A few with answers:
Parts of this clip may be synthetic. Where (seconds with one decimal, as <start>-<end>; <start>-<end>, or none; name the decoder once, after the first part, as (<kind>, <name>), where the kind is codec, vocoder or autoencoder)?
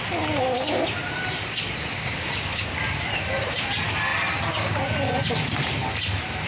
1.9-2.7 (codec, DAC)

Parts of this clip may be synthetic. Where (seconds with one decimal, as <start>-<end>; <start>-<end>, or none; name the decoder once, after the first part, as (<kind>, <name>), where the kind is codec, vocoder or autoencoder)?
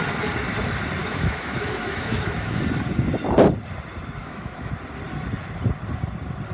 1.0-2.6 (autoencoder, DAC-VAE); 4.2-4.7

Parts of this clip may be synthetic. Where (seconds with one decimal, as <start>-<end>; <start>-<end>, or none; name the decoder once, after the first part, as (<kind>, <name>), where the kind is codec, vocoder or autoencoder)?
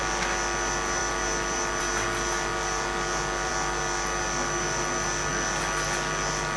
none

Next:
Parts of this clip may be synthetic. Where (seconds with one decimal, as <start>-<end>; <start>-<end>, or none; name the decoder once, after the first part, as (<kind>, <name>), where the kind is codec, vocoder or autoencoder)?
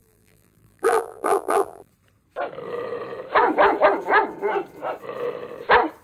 0.0-1.9 (vocoder, BigVGAN v2)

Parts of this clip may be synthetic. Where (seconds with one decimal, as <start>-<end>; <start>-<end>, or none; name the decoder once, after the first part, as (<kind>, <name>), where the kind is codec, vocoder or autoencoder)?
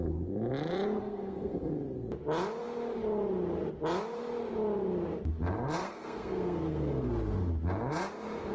1.0-1.7 (codec, SNAC); 5.8-7.1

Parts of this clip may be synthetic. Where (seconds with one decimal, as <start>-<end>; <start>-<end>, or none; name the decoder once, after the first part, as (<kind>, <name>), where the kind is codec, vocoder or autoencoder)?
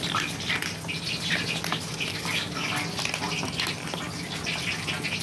2.1-2.7 (codec, DAC)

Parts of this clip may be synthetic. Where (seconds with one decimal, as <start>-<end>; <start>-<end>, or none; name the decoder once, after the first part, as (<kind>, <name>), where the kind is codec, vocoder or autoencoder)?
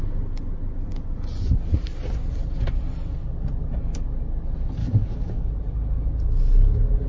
4.8-5.5 (codec, DAC)